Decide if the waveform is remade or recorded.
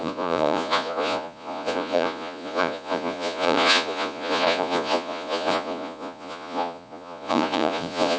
remade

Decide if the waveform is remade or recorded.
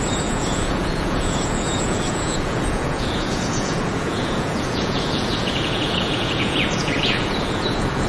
remade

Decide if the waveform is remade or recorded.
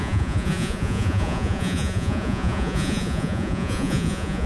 remade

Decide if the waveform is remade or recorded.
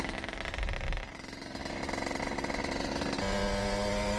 recorded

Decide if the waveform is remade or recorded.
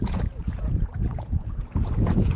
remade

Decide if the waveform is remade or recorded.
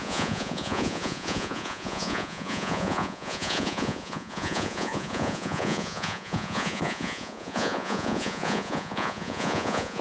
remade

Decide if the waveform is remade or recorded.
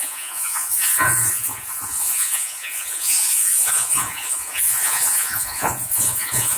remade